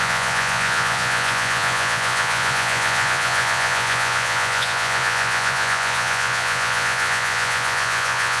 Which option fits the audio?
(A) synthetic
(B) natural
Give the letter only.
A